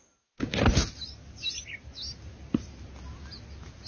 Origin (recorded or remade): recorded